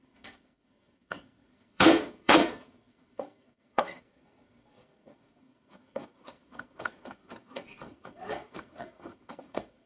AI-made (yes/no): yes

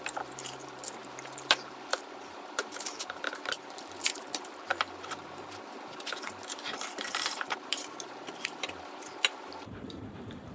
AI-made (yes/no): yes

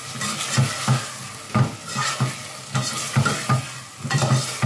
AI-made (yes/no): no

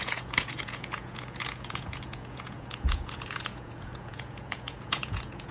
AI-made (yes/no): yes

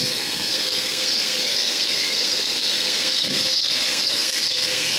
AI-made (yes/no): yes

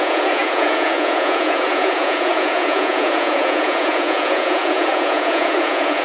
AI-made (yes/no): yes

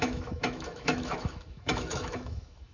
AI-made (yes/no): yes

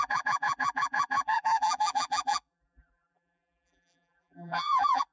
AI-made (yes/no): yes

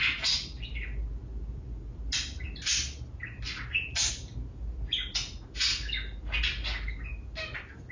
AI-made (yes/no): no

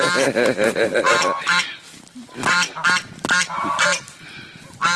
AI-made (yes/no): no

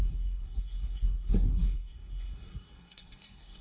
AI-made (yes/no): yes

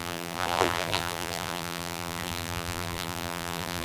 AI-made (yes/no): yes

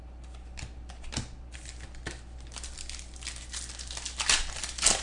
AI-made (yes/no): no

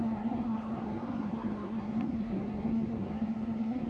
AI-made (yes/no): yes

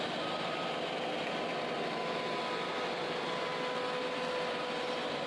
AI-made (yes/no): no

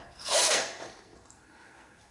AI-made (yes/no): yes